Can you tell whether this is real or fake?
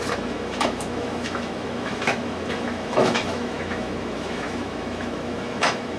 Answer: fake